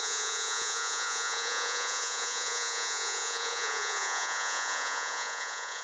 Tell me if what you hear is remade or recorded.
remade